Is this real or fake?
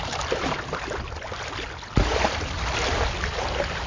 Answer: real